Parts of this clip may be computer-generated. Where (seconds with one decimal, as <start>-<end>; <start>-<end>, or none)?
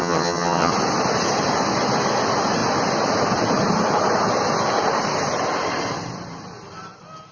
0.0-0.7